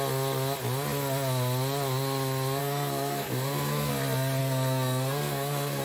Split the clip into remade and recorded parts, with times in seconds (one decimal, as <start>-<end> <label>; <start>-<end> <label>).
0.0-2.6 recorded; 2.6-3.9 remade; 3.9-4.4 recorded; 4.4-5.8 remade